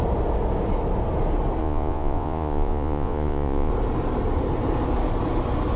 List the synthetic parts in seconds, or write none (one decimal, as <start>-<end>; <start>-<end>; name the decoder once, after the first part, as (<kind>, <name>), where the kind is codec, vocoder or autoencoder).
1.6-3.7 (vocoder, Vocos)